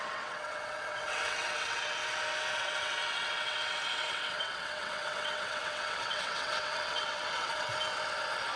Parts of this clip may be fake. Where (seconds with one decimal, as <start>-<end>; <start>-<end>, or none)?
0.0-2.0; 2.5-7.7